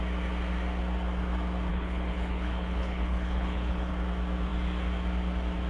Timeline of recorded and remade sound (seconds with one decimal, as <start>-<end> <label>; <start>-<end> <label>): 0.0-1.7 recorded; 1.7-3.9 remade; 3.9-5.7 recorded